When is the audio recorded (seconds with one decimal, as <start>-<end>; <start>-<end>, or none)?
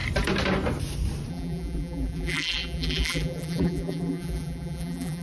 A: 0.0-1.3